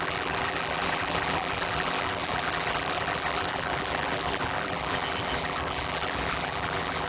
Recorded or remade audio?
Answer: remade